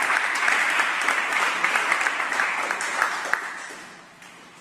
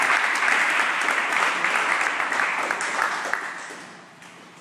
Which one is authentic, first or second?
second